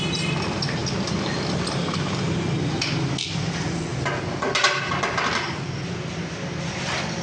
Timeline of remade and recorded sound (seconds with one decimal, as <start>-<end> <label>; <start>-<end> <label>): 0.0-7.2 recorded